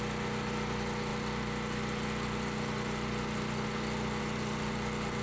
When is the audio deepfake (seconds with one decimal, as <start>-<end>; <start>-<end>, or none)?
none